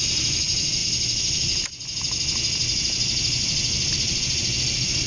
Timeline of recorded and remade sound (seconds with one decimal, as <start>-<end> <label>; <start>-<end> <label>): 0.0-5.1 recorded